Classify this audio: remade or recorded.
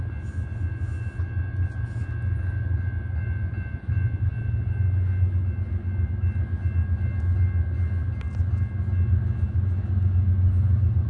recorded